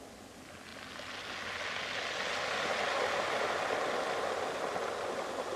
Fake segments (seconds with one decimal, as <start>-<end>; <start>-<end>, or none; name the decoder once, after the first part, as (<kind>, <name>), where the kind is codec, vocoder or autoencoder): none

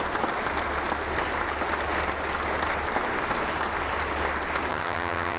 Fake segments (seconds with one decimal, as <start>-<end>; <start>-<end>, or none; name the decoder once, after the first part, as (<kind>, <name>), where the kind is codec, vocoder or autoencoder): 4.7-5.4 (vocoder, HiFi-GAN)

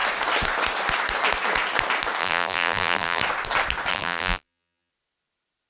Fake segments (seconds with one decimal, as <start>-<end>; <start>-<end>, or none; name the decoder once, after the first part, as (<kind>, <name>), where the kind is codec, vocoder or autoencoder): 2.2-3.2 (vocoder, BigVGAN v2); 3.9-4.9

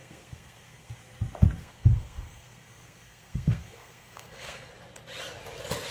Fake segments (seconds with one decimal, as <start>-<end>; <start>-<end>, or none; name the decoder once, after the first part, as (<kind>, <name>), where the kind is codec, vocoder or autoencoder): 0.0-1.0 (codec, SNAC); 1.6-4.7

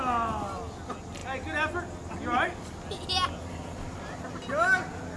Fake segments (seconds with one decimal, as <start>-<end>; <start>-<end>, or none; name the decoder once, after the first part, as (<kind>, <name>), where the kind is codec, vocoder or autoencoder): none

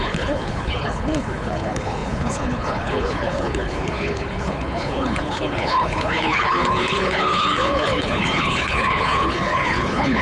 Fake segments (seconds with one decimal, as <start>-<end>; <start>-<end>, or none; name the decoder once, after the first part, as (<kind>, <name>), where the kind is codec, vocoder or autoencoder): 0.0-10.2 (codec, HILCodec)

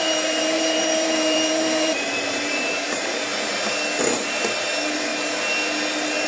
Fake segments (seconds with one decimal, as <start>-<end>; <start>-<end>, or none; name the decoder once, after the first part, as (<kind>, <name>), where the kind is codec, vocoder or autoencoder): 0.0-3.3 (vocoder, BigVGAN v2); 4.0-5.1